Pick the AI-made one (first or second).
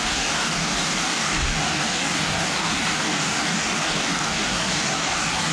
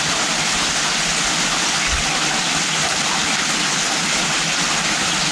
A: first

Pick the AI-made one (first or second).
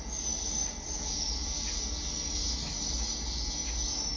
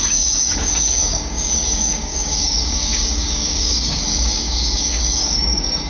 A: second